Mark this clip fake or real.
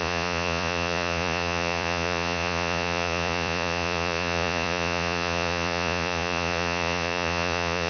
fake